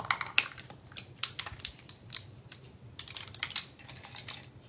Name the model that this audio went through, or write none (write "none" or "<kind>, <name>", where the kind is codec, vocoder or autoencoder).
none